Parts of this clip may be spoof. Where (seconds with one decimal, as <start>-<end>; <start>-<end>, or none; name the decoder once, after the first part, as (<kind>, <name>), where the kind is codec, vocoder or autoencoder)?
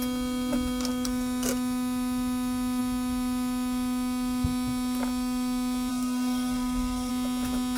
5.9-7.1 (codec, SNAC)